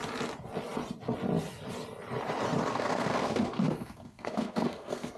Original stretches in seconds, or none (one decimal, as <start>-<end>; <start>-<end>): 0.0-2.7